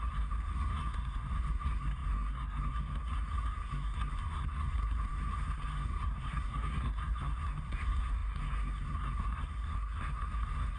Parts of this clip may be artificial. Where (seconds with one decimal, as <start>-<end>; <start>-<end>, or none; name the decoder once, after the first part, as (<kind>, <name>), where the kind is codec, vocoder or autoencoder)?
0.0-10.8 (codec, SNAC)